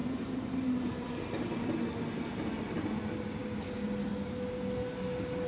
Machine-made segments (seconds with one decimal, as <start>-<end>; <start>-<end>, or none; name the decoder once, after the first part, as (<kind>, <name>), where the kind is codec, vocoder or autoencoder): 0.0-1.7 (vocoder, BigVGAN v2)